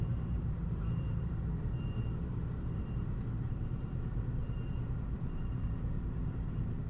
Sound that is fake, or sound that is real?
fake